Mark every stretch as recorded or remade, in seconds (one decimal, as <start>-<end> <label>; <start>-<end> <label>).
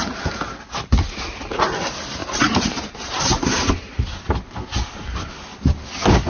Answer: 0.0-2.2 recorded; 2.2-3.2 remade; 3.2-6.3 recorded